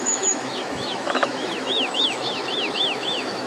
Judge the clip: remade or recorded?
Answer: remade